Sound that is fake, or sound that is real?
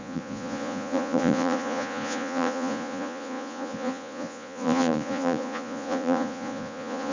fake